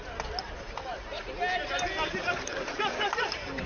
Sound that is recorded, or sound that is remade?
recorded